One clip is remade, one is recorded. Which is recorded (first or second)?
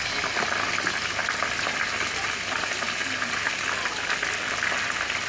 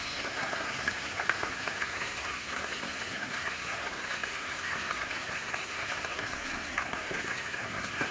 first